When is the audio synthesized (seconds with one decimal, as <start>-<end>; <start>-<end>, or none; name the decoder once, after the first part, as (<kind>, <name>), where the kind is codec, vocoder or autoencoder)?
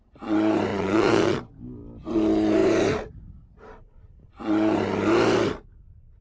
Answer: 0.7-1.4 (vocoder, Vocos)